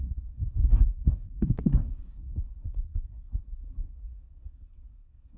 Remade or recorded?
remade